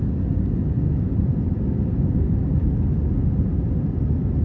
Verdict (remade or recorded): recorded